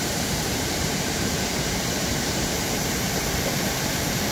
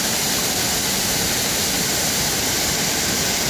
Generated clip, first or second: first